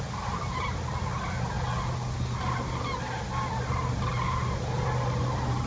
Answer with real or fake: real